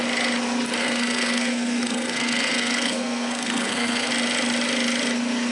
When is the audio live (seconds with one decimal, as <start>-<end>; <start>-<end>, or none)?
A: 0.0-0.8; 4.1-5.5